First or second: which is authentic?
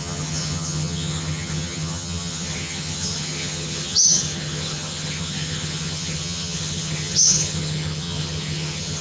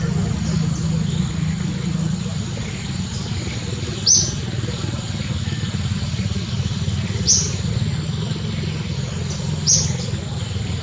second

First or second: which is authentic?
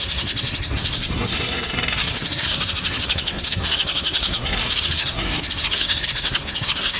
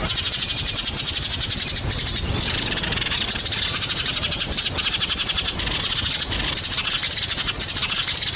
second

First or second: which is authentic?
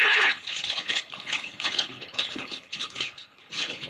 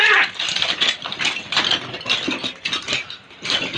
second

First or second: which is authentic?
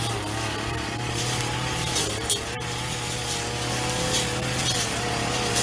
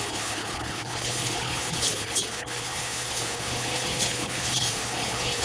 first